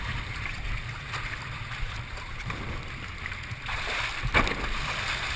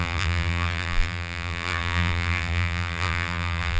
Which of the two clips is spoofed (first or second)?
second